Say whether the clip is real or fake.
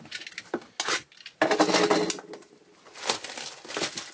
real